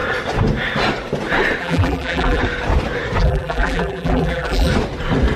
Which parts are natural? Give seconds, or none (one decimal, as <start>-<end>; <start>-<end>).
0.0-1.6; 2.4-3.2; 4.7-5.4